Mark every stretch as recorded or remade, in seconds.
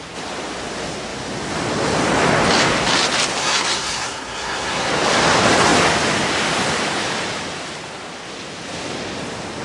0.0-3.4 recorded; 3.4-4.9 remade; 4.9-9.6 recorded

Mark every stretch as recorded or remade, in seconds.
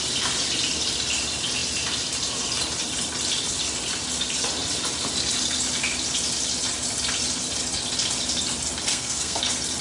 0.0-8.9 recorded; 8.9-9.4 remade; 9.4-9.8 recorded